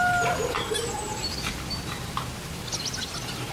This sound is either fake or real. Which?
real